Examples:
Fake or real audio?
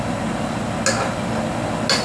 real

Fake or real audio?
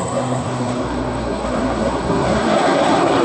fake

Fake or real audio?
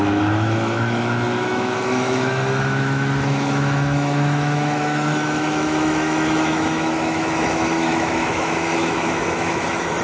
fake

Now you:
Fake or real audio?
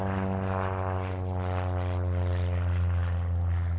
real